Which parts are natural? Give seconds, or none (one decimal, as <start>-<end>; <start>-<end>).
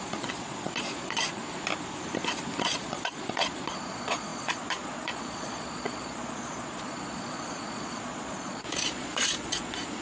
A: 1.4-2.6